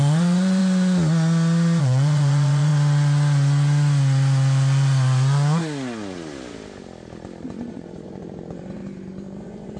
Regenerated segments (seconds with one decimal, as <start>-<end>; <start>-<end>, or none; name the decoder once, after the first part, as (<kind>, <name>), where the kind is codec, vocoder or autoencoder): 0.0-0.6 (vocoder, Vocos); 1.8-2.7; 7.7-8.8; 9.4-9.8